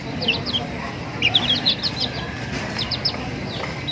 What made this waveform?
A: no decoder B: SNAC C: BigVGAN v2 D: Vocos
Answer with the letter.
A